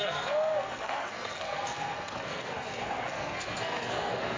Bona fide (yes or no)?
no